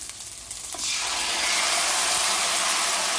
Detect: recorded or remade recorded